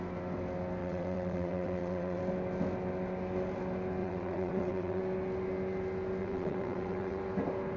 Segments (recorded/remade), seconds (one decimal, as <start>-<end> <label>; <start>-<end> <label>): 0.0-0.8 recorded; 0.8-2.2 remade; 2.2-4.0 recorded; 4.0-5.0 remade; 5.0-6.2 recorded; 6.2-7.2 remade; 7.2-7.8 recorded